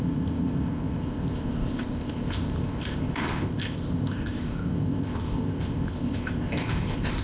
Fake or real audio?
fake